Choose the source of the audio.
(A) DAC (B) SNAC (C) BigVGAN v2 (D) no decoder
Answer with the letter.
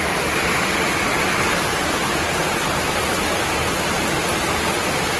D